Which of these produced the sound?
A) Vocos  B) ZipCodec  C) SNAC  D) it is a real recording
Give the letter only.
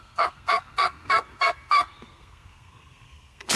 C